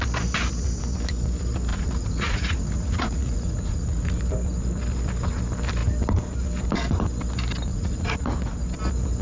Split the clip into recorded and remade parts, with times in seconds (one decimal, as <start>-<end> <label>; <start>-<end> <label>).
0.0-1.7 recorded; 1.7-4.2 remade; 4.2-7.7 recorded; 7.7-8.6 remade; 8.6-9.2 recorded